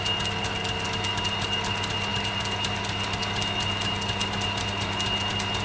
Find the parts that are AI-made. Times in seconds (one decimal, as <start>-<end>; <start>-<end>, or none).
none